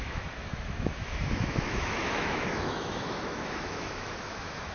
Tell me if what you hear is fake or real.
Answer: fake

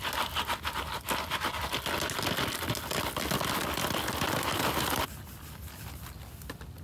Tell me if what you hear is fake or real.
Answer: real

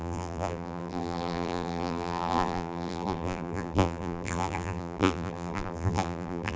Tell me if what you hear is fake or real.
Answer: fake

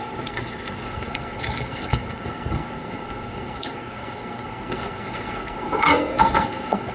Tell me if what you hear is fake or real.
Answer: fake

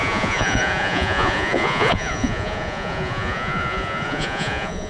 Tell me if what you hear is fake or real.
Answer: fake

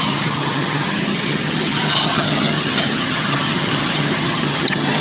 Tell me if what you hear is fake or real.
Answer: fake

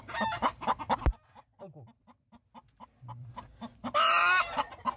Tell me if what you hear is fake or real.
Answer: real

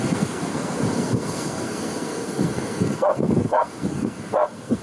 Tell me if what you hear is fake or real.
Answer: fake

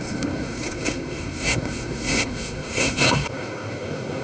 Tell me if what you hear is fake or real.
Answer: fake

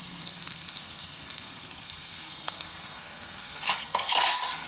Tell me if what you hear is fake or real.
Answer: fake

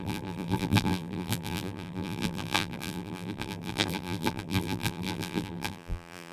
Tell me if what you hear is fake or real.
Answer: fake